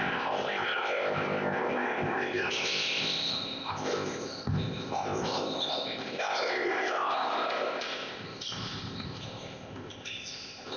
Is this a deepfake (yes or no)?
yes